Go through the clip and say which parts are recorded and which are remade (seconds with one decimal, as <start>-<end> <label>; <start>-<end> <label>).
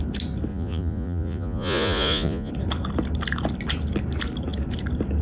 0.0-0.5 recorded; 0.5-2.5 remade; 2.5-5.2 recorded